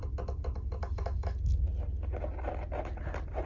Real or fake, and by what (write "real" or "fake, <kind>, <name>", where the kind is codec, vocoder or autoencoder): real